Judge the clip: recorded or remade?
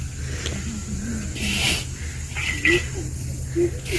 recorded